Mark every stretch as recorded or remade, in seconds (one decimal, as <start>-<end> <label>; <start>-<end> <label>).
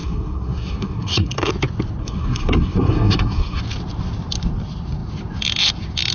0.0-1.5 remade; 1.5-2.0 recorded; 2.0-3.6 remade; 3.6-6.1 recorded